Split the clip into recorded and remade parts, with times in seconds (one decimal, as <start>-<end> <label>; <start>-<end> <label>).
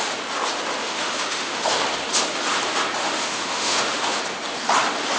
0.0-0.8 recorded; 0.8-1.8 remade; 1.8-3.0 recorded; 3.0-4.2 remade; 4.2-5.2 recorded